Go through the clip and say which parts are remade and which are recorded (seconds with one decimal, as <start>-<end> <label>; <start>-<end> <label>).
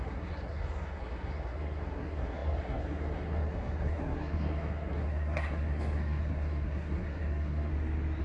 0.0-7.7 remade; 7.7-8.2 recorded